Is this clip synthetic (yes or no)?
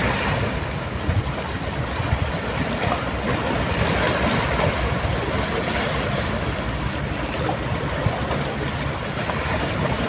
no